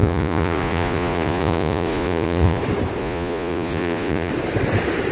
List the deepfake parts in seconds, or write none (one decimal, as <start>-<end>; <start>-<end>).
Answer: 0.0-2.6; 3.0-4.3